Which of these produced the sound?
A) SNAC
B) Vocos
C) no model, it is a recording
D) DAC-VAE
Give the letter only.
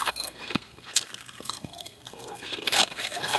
A